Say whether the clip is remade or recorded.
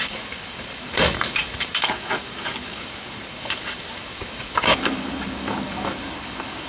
remade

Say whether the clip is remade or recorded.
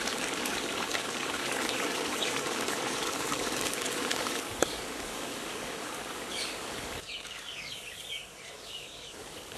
remade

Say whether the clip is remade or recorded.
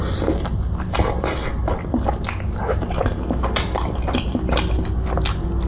recorded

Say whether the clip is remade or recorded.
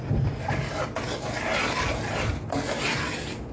recorded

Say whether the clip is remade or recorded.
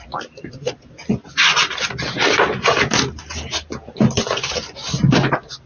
recorded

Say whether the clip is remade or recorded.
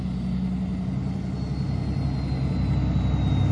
recorded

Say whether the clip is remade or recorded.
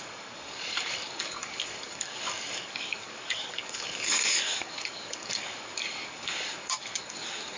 remade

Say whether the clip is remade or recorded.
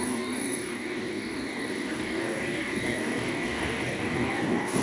remade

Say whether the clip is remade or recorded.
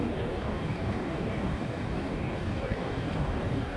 remade